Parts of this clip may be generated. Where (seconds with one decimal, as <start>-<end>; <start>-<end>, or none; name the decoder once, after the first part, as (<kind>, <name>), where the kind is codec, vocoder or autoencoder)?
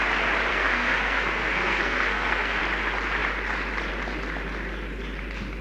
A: 0.5-2.6 (codec, SNAC)